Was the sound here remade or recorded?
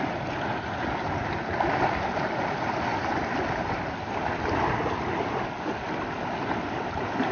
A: recorded